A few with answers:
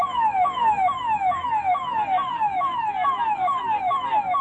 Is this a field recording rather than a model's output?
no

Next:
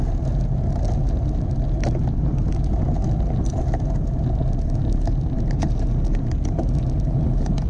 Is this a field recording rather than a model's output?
yes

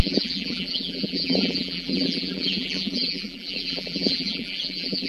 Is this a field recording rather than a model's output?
no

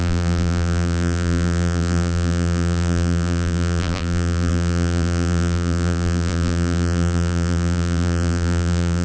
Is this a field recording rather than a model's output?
no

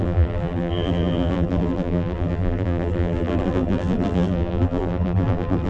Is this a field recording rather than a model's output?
no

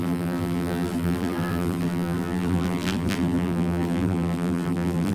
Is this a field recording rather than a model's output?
no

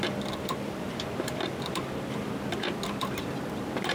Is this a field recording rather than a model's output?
yes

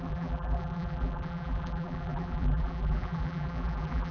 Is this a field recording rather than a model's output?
no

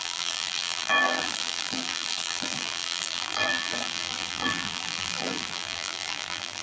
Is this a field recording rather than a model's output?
no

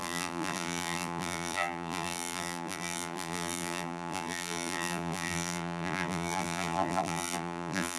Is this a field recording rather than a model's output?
no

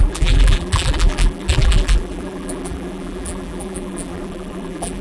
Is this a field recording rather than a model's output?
no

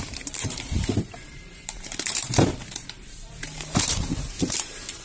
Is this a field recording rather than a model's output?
no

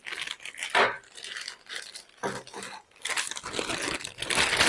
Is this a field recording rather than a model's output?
yes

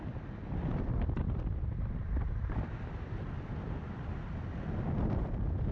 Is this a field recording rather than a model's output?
no